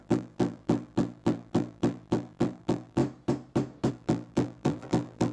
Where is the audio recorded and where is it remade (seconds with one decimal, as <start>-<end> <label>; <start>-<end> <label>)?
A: 0.0-3.0 remade; 3.0-3.9 recorded; 3.9-5.3 remade